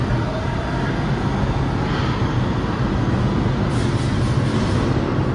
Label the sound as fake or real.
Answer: real